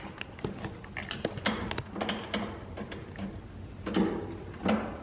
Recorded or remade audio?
recorded